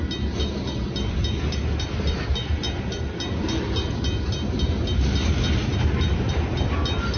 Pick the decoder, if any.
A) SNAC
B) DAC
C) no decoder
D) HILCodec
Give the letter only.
C